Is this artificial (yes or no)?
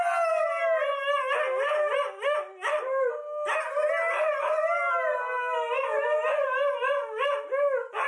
no